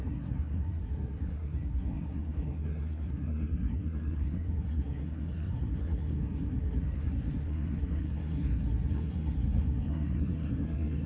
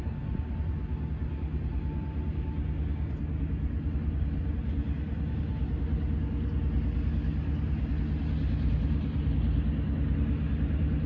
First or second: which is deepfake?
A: first